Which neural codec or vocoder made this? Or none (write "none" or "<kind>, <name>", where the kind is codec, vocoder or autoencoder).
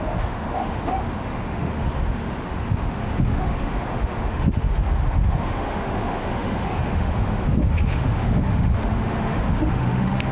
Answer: autoencoder, DAC-VAE